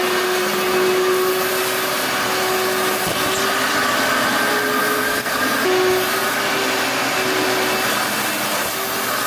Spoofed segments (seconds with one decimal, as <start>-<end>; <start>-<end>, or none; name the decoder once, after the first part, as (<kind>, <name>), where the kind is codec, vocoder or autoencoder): 4.8-5.4 (codec, SNAC)

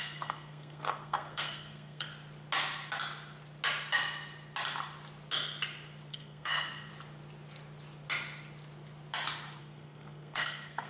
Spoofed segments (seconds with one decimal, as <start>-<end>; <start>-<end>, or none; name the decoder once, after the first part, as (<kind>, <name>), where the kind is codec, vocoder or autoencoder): 0.0-2.1 (codec, SNAC); 6.1-6.9; 9.6-10.9

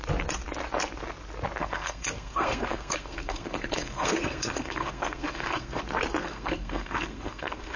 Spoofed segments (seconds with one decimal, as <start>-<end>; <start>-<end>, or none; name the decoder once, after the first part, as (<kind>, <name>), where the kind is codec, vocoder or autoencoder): 1.6-5.8 (codec, SNAC); 6.2-7.8